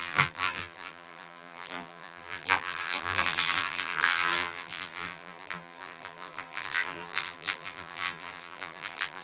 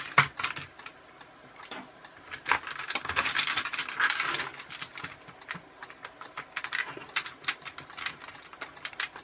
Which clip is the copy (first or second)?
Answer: first